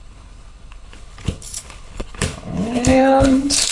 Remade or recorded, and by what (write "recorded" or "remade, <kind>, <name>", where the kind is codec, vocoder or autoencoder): remade, codec, HILCodec